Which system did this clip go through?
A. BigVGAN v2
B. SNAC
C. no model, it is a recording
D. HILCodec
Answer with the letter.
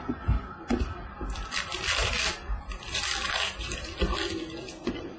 C